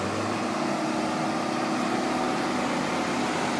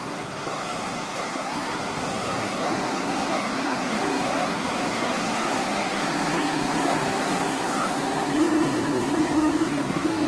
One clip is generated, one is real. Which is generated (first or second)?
second